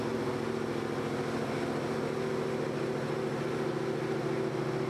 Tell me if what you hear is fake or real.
real